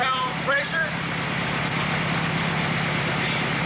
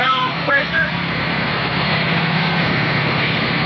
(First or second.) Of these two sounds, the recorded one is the first